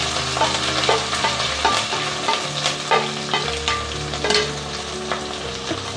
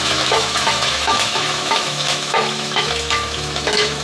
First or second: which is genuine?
first